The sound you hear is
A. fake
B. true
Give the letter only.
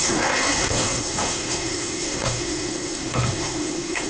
A